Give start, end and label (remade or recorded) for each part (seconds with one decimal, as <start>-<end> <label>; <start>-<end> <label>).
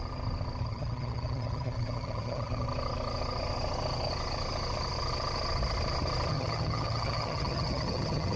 0.0-0.6 recorded; 0.6-2.7 remade; 2.7-6.3 recorded; 6.3-8.4 remade